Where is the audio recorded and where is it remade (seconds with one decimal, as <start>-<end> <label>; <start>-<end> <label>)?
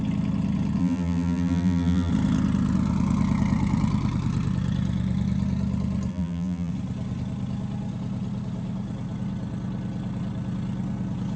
0.0-0.8 recorded; 0.8-2.1 remade; 2.1-6.1 recorded; 6.1-6.7 remade; 6.7-11.4 recorded